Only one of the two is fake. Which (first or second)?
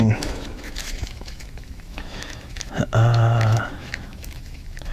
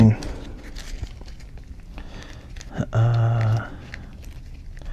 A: first